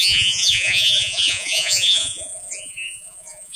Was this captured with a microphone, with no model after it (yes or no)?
no